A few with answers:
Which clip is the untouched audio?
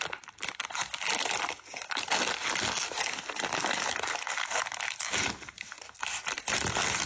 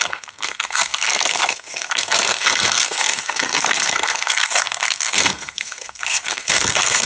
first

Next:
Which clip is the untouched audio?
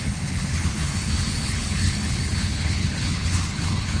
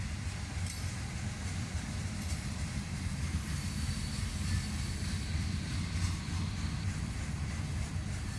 second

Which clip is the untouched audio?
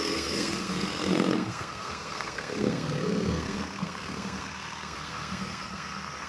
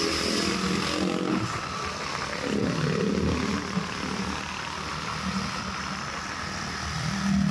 second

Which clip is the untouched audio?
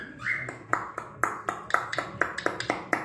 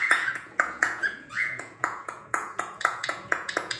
first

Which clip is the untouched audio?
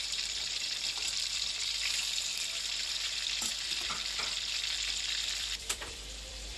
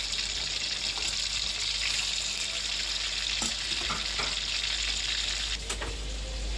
second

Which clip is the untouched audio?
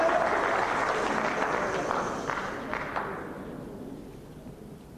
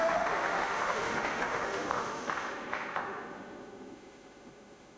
first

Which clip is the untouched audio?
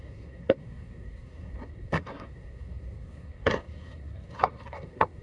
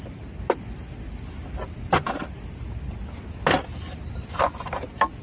second